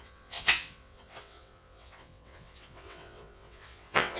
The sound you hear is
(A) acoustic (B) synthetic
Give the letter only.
B